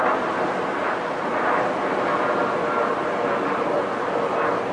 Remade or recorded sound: recorded